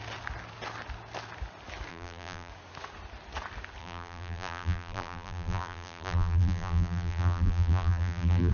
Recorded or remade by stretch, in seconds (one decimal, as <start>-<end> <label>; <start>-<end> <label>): 0.0-1.9 recorded; 1.9-2.5 remade; 2.5-3.8 recorded; 3.8-8.5 remade